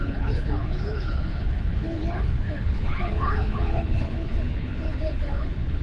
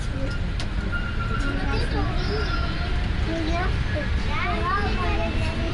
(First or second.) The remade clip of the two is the first